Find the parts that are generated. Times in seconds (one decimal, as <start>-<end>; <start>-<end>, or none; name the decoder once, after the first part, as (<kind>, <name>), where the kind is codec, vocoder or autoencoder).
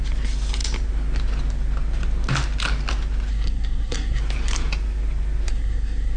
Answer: 3.3-4.2 (codec, SNAC); 5.5-6.2